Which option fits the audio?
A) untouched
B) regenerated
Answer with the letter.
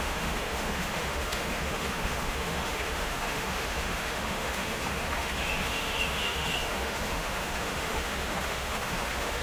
B